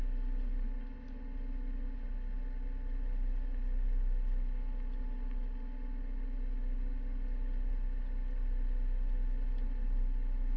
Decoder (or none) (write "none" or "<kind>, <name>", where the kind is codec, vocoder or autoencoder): none